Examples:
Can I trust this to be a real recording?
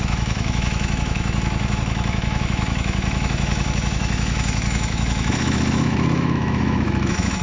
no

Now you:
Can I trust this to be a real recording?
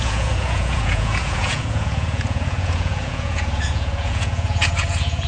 no